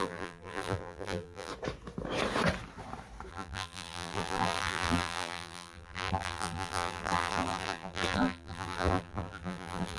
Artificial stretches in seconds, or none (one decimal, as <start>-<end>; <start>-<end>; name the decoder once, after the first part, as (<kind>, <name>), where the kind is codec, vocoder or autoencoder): 0.0-1.5 (vocoder, BigVGAN v2); 3.3-10.0